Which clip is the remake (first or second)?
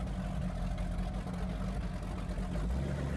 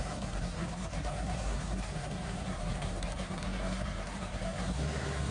second